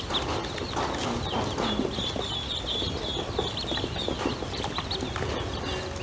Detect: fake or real real